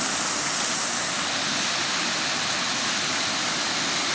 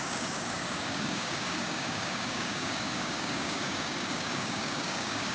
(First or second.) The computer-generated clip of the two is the second